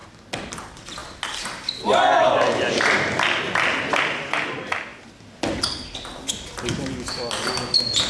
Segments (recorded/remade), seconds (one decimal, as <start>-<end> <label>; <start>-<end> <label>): 0.0-8.1 recorded

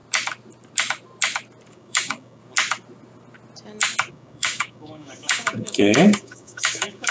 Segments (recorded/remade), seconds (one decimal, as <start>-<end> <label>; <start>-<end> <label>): 0.0-1.7 recorded; 1.7-2.4 remade; 2.4-4.1 recorded; 4.1-7.1 remade

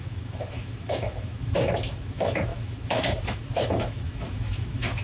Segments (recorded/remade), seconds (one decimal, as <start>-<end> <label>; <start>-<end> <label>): 0.0-5.0 remade

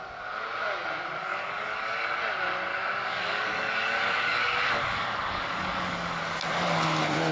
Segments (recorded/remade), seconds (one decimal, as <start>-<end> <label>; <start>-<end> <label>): 0.0-1.2 recorded; 1.2-2.2 remade; 2.2-2.7 recorded; 2.7-6.2 remade; 6.2-7.3 recorded

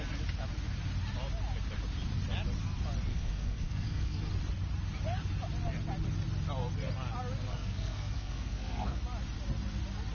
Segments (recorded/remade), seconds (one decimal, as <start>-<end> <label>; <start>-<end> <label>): 0.0-3.1 recorded; 3.1-4.2 remade; 4.2-7.5 recorded; 7.5-9.0 remade; 9.0-10.1 recorded